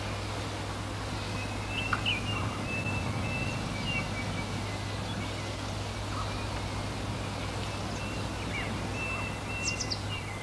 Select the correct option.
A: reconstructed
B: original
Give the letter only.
B